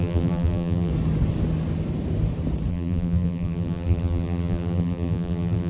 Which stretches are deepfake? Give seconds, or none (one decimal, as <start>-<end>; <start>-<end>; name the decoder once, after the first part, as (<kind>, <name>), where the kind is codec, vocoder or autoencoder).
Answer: 0.0-0.9 (vocoder, BigVGAN v2); 2.7-5.7